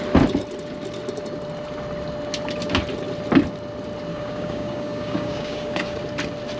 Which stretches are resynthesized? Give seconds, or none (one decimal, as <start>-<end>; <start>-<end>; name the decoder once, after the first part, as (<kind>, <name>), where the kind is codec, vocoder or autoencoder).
4.1-6.0 (codec, DAC)